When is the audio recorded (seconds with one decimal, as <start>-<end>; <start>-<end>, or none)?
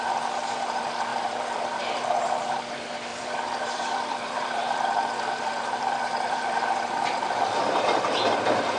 0.0-1.1; 1.8-3.1; 7.6-8.8